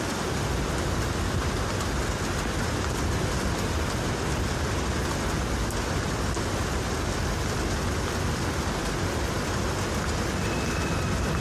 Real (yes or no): yes